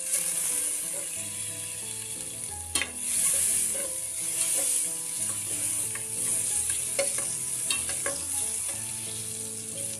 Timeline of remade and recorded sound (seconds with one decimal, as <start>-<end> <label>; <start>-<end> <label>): 0.0-10.0 recorded